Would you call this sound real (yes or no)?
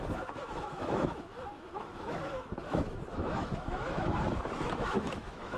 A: no